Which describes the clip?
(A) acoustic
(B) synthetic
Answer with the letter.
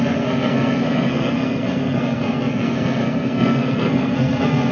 B